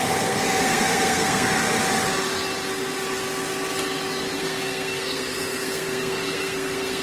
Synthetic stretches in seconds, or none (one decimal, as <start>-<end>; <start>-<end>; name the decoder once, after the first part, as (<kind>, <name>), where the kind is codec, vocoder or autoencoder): 0.0-1.6 (codec, SNAC); 4.4-7.0